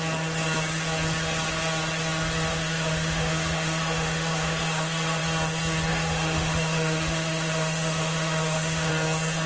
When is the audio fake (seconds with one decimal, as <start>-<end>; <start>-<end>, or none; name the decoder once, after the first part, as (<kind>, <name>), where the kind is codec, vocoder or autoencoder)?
2.5-5.2 (autoencoder, DAC-VAE); 5.9-8.9